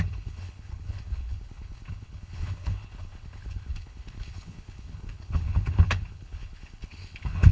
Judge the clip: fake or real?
fake